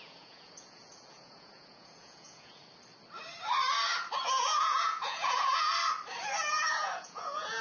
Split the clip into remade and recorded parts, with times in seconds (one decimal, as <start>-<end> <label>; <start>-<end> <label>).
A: 0.0-2.6 remade; 2.6-4.2 recorded; 4.2-5.7 remade; 5.7-6.5 recorded; 6.5-7.6 remade